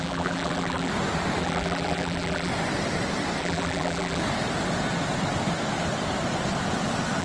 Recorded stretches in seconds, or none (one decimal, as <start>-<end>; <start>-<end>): 0.9-1.4; 2.5-3.4; 4.2-7.2